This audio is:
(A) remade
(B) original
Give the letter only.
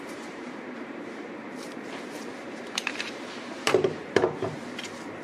A